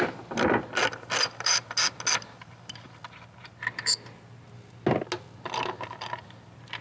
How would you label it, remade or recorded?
recorded